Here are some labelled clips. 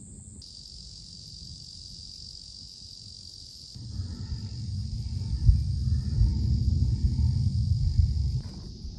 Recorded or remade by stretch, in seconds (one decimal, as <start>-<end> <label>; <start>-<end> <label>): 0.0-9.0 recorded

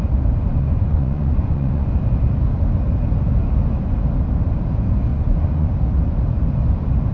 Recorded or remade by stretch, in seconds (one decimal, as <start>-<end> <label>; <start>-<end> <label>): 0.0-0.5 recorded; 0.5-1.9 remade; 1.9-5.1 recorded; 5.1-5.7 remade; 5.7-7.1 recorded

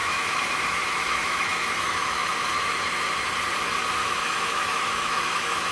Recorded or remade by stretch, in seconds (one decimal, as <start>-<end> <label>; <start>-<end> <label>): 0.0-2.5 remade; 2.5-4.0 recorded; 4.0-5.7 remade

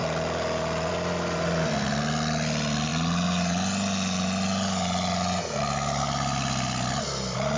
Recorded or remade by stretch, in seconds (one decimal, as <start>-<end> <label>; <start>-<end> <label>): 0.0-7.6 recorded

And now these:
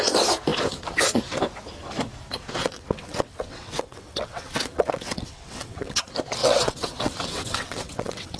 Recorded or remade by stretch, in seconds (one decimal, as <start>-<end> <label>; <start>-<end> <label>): 0.0-2.6 recorded; 2.6-6.0 remade; 6.0-6.4 recorded; 6.4-8.4 remade

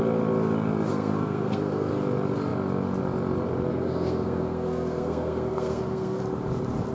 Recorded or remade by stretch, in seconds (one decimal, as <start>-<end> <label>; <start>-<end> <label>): 0.0-0.9 recorded; 0.9-1.9 remade; 1.9-3.7 recorded; 3.7-6.2 remade; 6.2-6.9 recorded

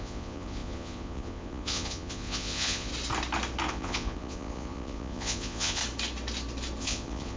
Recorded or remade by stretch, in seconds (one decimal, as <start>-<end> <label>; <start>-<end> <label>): 0.0-2.9 remade; 2.9-3.7 recorded; 3.7-5.8 remade; 5.8-6.8 recorded; 6.8-7.4 remade